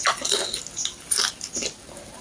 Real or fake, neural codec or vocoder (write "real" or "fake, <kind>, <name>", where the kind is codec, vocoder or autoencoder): real